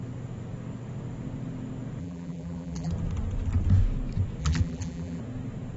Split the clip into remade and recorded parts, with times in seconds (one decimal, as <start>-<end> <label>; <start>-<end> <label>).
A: 0.0-2.0 recorded; 2.0-2.9 remade; 2.9-4.4 recorded; 4.4-5.2 remade; 5.2-5.8 recorded